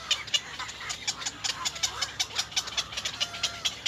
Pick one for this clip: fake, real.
real